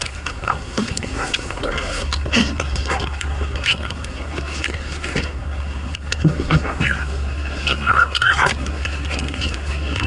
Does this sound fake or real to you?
fake